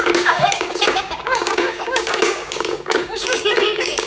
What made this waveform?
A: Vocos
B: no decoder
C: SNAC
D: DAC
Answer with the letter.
D